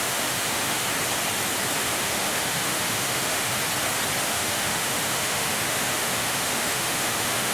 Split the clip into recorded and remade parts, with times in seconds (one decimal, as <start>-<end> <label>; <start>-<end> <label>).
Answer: 0.0-0.8 remade; 0.8-1.8 recorded; 1.8-3.6 remade; 3.6-4.3 recorded; 4.3-7.5 remade